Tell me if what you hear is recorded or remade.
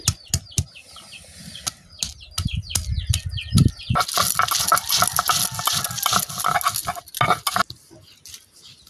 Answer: recorded